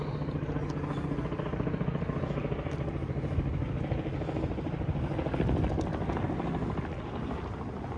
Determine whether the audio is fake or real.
real